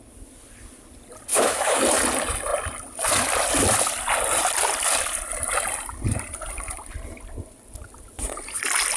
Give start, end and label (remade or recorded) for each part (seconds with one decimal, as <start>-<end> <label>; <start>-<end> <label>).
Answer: 0.0-1.3 recorded; 1.3-1.8 remade; 1.8-9.0 recorded